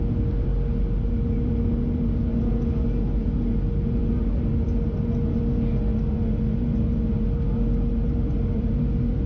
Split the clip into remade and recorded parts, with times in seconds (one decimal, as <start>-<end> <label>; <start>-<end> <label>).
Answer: 0.0-9.3 recorded